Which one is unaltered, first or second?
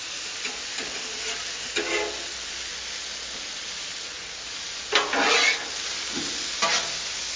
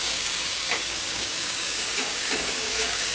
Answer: first